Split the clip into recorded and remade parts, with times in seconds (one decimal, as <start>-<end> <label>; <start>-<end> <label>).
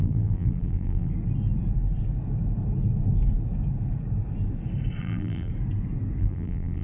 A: 0.0-1.1 remade; 1.1-5.0 recorded; 5.0-5.5 remade; 5.5-6.2 recorded; 6.2-6.8 remade